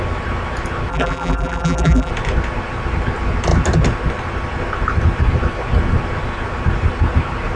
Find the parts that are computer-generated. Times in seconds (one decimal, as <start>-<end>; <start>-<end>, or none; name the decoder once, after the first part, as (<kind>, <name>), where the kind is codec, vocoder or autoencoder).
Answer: 0.9-2.1 (vocoder, BigVGAN v2)